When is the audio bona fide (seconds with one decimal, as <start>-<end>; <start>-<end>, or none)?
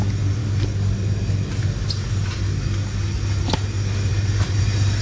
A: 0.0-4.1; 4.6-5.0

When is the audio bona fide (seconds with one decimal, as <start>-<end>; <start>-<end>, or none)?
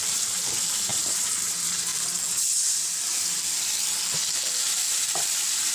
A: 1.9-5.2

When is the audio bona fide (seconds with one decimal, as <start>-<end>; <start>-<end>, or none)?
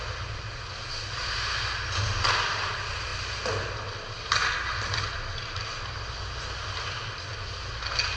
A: 0.0-8.2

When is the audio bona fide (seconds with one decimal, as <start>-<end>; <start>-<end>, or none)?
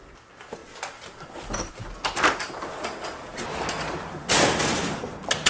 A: 0.0-5.5